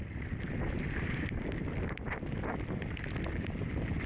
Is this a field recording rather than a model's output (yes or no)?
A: no